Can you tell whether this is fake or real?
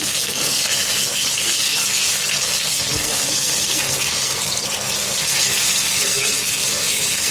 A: fake